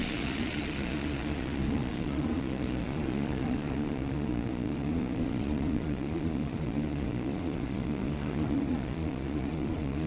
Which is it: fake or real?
fake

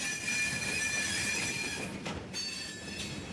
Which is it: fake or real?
real